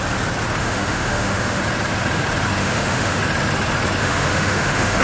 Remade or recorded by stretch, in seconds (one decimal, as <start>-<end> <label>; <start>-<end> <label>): 0.0-0.6 recorded; 0.6-1.6 remade; 1.6-2.6 recorded; 2.6-3.2 remade; 3.2-4.0 recorded; 4.0-5.0 remade